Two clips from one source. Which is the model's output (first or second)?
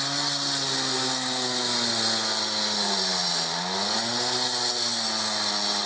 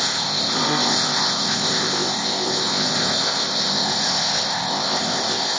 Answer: second